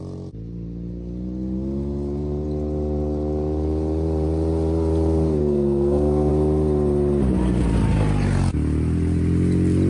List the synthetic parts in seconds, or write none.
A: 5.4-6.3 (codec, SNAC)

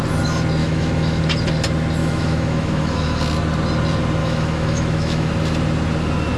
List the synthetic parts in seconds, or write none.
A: 0.6-1.2 (autoencoder, DAC-VAE); 2.0-3.2; 4.2-5.3

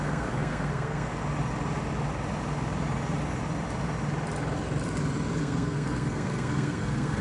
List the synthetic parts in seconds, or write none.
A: 0.0-1.1 (codec, SNAC); 5.4-7.2